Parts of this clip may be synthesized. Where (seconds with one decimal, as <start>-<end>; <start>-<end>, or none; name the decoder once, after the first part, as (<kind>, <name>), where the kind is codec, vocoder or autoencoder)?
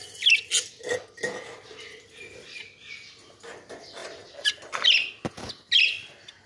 none